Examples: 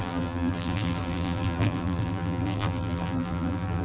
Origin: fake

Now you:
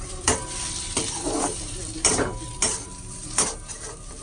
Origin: fake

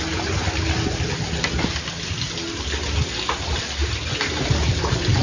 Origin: real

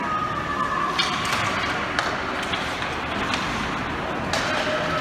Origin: real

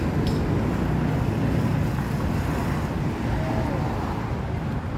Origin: real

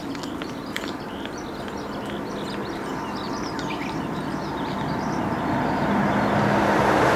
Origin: real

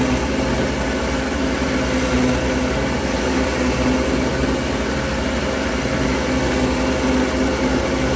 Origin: real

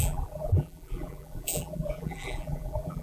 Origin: fake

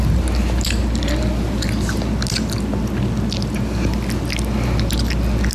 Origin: real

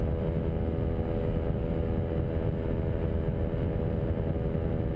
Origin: real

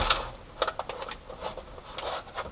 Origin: real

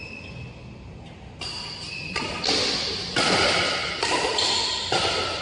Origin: real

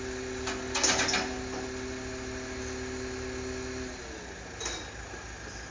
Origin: real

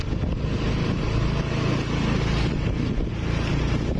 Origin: real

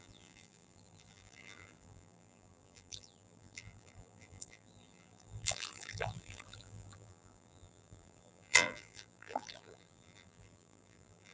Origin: fake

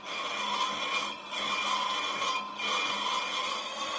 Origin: real